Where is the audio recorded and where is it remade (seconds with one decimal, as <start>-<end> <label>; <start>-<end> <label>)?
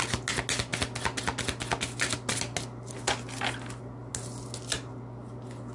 0.0-5.7 recorded